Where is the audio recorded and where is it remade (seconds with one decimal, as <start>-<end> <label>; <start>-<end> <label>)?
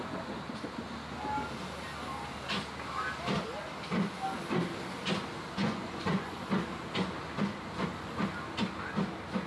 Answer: 0.0-5.6 recorded; 5.6-6.4 remade; 6.4-9.5 recorded